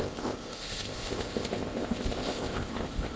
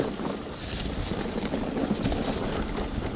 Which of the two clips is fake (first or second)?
first